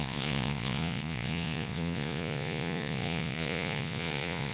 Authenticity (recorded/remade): remade